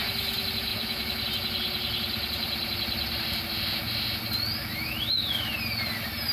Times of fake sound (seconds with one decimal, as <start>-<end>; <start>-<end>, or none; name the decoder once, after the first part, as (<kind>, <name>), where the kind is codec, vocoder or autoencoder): 0.7-1.2 (autoencoder, DAC-VAE); 4.6-5.5